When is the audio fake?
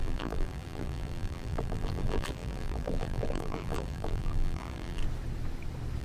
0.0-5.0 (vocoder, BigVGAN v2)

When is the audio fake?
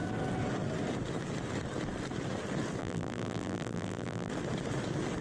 2.8-4.3 (vocoder, BigVGAN v2)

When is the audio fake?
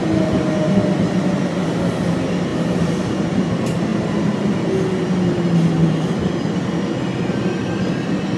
3.9-4.6 (vocoder, BigVGAN v2)